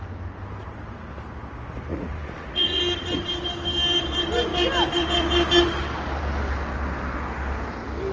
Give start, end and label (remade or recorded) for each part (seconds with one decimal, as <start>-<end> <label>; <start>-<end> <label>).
0.0-1.9 recorded; 1.9-2.8 remade; 2.8-8.1 recorded